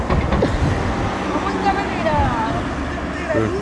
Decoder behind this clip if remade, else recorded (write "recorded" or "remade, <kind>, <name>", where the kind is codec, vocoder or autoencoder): recorded